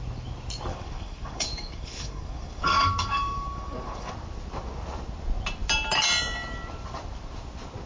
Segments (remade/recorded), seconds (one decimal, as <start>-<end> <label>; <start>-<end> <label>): 0.0-0.7 recorded; 0.7-4.1 remade; 4.1-7.9 recorded